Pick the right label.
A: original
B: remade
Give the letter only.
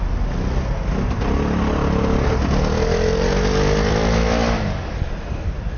A